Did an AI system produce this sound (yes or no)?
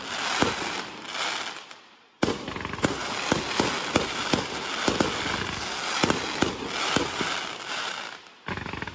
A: no